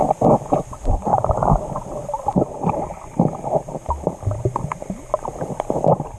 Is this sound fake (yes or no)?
no